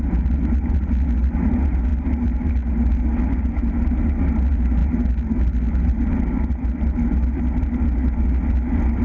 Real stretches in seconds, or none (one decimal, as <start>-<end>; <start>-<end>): 0.0-9.0